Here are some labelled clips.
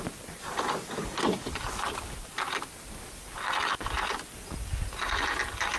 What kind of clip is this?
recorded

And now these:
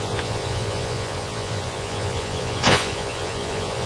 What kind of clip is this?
remade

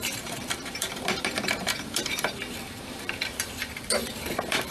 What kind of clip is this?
remade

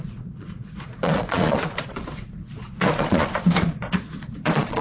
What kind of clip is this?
remade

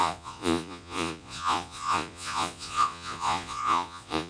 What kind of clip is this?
remade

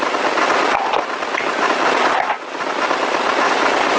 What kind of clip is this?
recorded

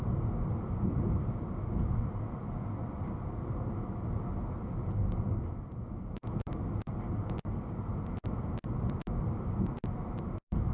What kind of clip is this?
recorded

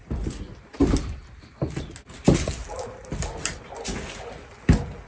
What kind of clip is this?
recorded